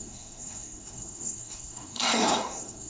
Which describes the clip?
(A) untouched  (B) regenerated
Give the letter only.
B